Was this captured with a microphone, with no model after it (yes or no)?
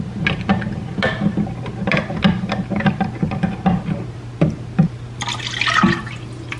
yes